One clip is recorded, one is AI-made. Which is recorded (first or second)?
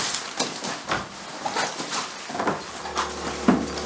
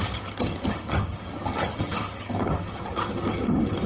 first